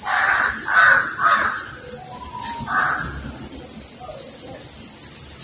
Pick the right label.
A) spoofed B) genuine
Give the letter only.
B